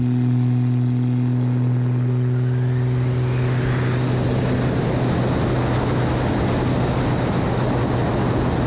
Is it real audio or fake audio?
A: real